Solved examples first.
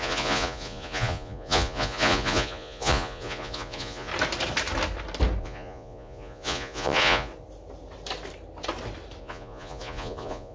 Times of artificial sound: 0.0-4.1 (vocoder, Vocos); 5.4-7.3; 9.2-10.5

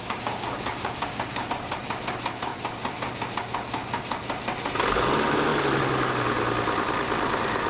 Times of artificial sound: 0.0-1.5 (codec, DAC)

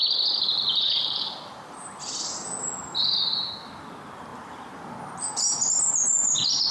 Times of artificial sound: none

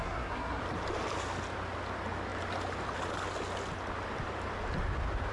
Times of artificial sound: 0.0-0.6 (codec, SNAC)

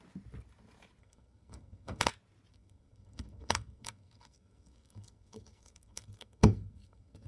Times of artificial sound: 1.0-2.1 (codec, SNAC); 2.5-7.3